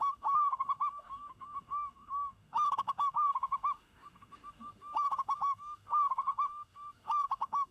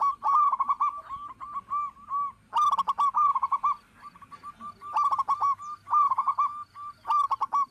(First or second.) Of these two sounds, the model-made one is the first